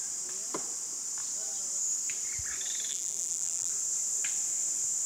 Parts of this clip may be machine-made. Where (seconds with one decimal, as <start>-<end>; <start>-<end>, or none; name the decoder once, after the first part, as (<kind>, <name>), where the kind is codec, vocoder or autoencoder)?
2.9-3.7 (vocoder, BigVGAN v2)